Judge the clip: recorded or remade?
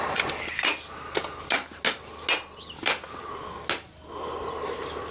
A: recorded